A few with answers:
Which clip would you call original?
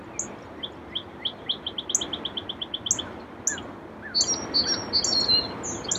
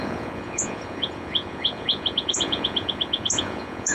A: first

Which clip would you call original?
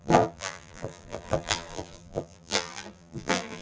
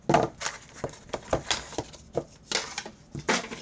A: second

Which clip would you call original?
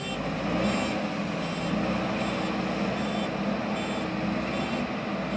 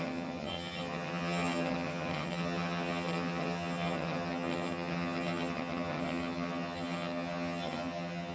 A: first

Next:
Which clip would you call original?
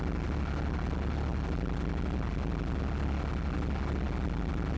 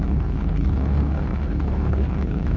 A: first